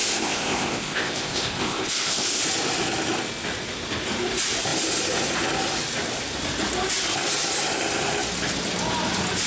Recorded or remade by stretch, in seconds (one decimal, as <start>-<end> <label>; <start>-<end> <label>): 0.0-2.4 remade; 2.4-9.5 recorded